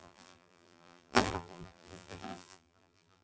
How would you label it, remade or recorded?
remade